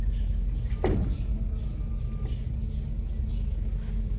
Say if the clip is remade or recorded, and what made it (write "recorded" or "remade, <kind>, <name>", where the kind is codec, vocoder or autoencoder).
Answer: recorded